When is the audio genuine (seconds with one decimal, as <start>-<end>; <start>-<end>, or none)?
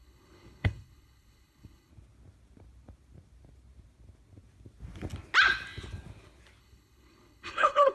1.9-6.6